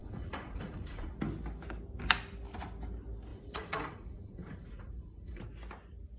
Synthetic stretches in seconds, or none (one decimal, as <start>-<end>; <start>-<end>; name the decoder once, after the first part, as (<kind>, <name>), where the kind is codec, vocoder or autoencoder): 0.0-1.2 (vocoder, Vocos); 3.3-5.4